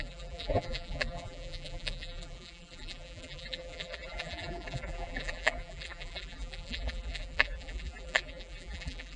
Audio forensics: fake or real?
fake